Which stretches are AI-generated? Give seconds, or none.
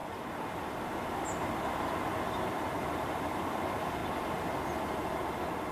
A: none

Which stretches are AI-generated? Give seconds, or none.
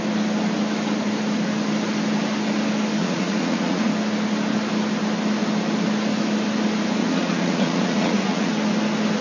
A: 3.0-3.9 (vocoder, Vocos); 7.0-8.5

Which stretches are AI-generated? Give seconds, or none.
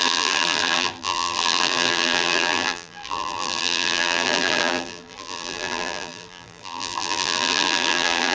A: 0.0-8.3 (vocoder, BigVGAN v2)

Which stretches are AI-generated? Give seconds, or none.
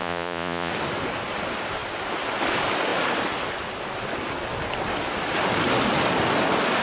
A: 0.0-0.7 (vocoder, Vocos)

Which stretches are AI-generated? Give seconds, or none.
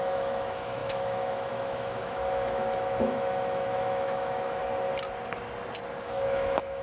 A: 0.0-4.6 (autoencoder, DAC-VAE); 6.0-6.8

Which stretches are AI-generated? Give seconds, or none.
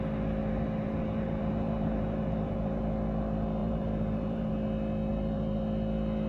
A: 0.4-2.8 (vocoder, BigVGAN v2); 3.6-4.5; 5.1-5.6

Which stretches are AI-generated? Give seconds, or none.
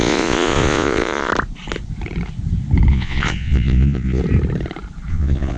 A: 0.0-1.3 (vocoder, Vocos); 2.9-4.2; 5.1-5.6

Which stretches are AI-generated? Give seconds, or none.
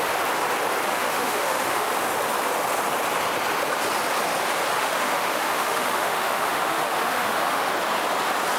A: 0.9-1.9 (autoencoder, DAC-VAE); 4.8-7.7